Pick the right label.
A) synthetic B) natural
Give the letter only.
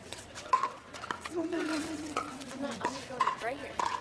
A